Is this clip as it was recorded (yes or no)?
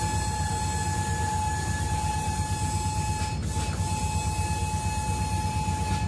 yes